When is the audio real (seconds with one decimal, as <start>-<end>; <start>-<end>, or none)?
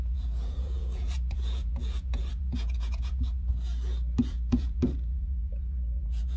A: 3.5-4.2